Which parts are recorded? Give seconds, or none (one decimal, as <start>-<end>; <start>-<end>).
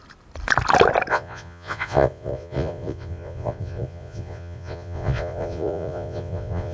0.0-1.1